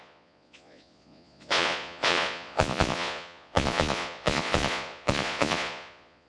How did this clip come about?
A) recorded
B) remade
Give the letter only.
B